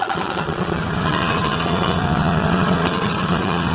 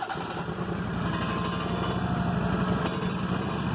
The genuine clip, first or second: second